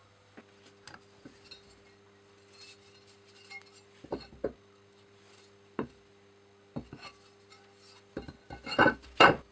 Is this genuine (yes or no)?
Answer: yes